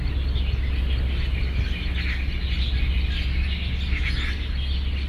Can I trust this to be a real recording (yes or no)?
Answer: yes